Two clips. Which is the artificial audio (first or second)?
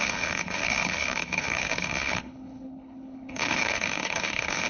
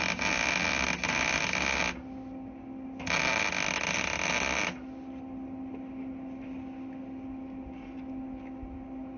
first